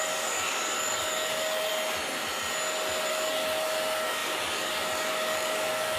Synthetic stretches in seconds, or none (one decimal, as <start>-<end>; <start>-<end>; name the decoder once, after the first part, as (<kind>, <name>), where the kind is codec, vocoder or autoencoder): 0.0-1.7 (codec, DAC); 3.1-6.0